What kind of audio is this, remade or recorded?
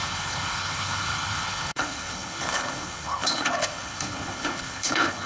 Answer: remade